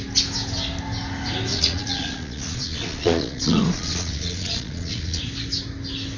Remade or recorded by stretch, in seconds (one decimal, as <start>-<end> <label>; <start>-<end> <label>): 0.0-1.5 recorded; 1.5-5.2 remade; 5.2-6.2 recorded